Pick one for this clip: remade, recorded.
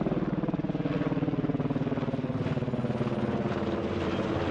recorded